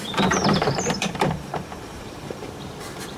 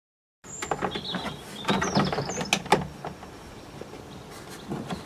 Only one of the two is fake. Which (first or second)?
first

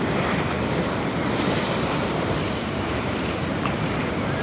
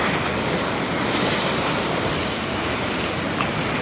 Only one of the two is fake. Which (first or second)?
first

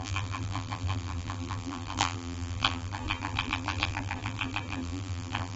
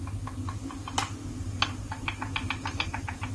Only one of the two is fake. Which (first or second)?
first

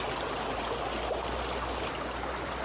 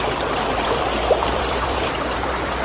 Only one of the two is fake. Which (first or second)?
second